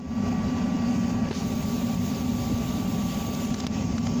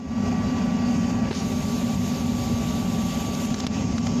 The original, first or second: second